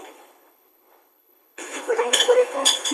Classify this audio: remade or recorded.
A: remade